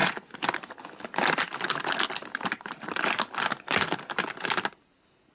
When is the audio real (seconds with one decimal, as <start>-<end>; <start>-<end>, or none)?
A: 0.0-5.3